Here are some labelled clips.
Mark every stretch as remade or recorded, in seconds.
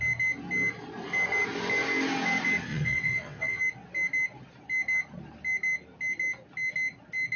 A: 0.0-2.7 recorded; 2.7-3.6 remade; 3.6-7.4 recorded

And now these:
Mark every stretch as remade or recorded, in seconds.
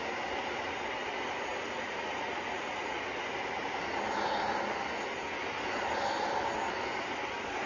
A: 0.0-1.5 recorded; 1.5-3.0 remade; 3.0-7.7 recorded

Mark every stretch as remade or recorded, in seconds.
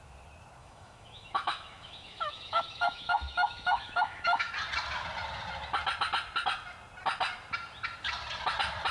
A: 0.0-0.6 recorded; 0.6-4.5 remade; 4.5-8.9 recorded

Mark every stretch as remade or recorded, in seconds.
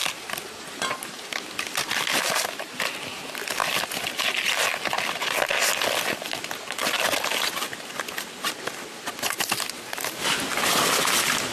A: 0.0-3.2 remade; 3.2-6.8 recorded; 6.8-7.6 remade; 7.6-11.5 recorded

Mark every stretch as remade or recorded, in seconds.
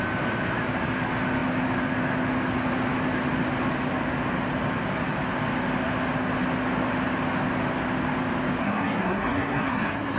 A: 0.0-8.6 recorded; 8.6-10.2 remade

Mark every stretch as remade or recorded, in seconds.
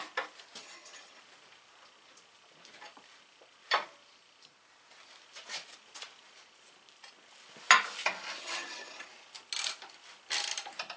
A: 0.0-0.6 recorded; 0.6-1.2 remade; 1.2-8.4 recorded; 8.4-9.1 remade; 9.1-11.0 recorded